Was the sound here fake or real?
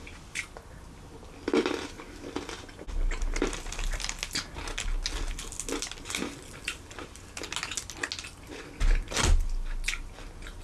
real